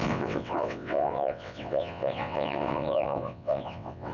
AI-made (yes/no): yes